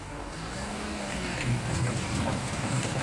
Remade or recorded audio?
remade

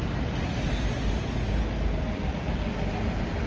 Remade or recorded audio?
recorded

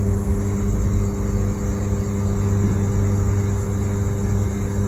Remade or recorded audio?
recorded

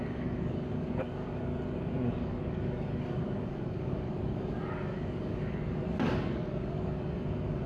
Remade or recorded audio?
remade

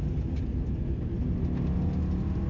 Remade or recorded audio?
recorded